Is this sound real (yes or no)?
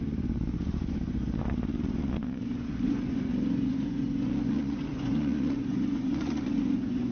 no